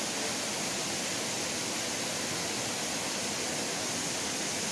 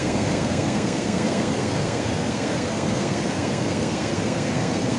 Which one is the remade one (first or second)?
second